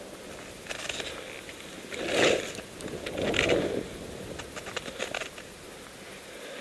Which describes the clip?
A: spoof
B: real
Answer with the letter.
B